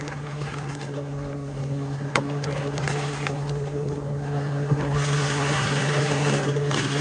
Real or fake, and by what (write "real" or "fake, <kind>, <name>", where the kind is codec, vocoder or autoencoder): fake, codec, SNAC